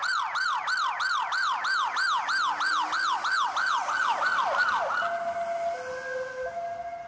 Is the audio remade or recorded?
recorded